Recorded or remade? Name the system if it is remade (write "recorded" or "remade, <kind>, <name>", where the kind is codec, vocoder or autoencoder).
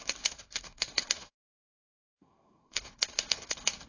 remade, codec, SNAC